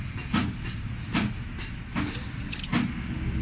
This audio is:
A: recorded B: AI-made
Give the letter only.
A